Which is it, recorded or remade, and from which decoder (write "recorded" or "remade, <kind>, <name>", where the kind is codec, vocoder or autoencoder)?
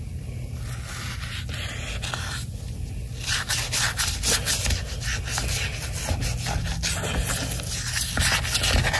recorded